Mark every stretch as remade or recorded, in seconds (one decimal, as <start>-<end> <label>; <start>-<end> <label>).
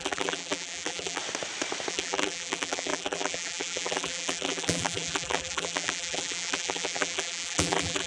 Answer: 0.0-1.2 remade; 1.2-1.9 recorded; 1.9-8.1 remade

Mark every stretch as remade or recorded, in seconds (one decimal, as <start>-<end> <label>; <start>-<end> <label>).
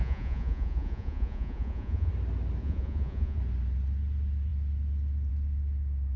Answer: 0.0-2.1 remade; 2.1-2.6 recorded; 2.6-3.4 remade; 3.4-6.2 recorded